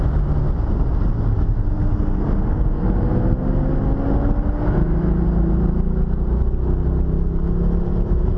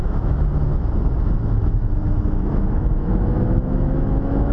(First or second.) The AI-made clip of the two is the second